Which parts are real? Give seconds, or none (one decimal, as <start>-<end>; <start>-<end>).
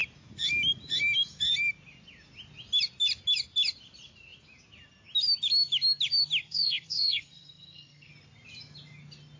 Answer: 0.0-6.4; 8.1-9.4